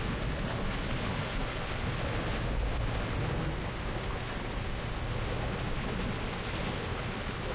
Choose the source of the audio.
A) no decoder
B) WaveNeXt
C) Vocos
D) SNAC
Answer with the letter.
A